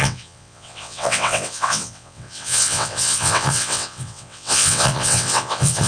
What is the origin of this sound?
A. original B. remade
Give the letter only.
B